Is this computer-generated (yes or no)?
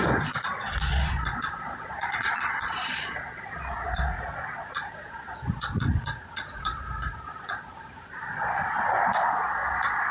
yes